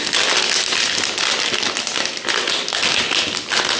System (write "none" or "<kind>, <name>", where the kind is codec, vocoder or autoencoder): none